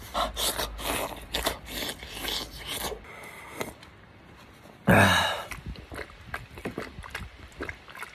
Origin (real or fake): real